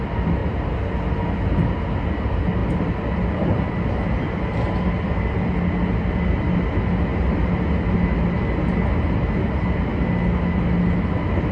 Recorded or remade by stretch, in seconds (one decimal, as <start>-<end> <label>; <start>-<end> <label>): 0.0-11.5 recorded